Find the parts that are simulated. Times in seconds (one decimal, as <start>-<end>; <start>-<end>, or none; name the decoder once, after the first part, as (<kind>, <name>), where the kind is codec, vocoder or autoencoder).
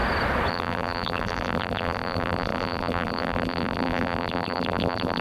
0.5-5.2 (vocoder, BigVGAN v2)